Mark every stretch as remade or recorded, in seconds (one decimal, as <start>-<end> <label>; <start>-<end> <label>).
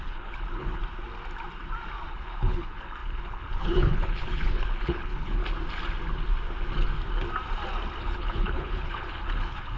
0.0-0.8 remade; 0.8-2.1 recorded; 2.1-5.4 remade; 5.4-8.0 recorded; 8.0-9.8 remade